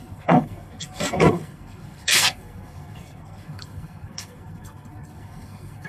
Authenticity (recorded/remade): remade